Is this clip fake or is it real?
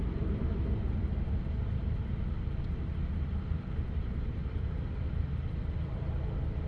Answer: real